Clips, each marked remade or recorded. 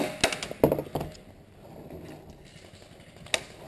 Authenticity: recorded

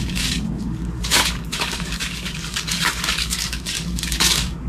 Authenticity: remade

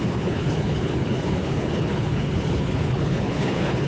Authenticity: remade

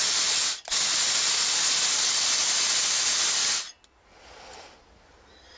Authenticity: recorded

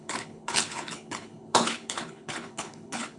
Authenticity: remade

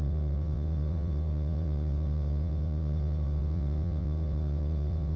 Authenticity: remade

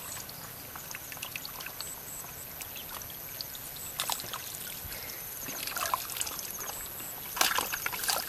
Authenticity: recorded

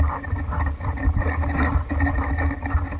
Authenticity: recorded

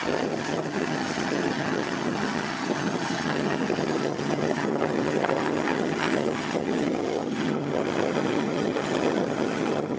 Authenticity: remade